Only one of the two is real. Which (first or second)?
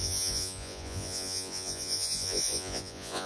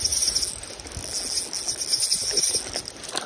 second